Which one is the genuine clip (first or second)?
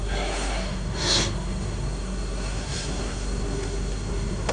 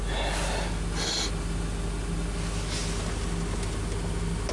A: second